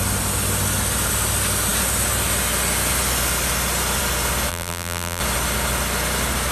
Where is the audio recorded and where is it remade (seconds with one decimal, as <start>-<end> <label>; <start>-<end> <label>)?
0.0-4.5 recorded; 4.5-5.2 remade; 5.2-6.5 recorded